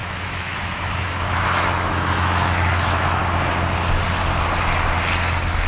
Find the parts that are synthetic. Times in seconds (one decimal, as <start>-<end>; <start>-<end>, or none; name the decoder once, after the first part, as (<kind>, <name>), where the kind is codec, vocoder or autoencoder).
0.0-3.2 (autoencoder, DAC-VAE)